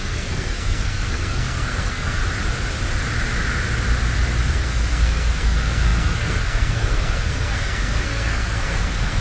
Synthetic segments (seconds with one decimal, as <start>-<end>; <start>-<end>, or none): 0.0-2.2; 4.5-9.2